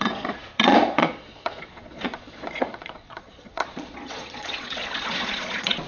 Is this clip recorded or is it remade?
remade